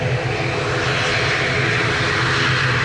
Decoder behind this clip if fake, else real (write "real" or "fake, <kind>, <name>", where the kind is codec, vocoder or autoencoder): real